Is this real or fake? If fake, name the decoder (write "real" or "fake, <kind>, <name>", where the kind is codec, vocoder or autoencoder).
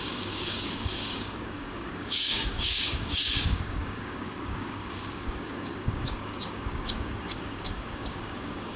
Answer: fake, codec, DAC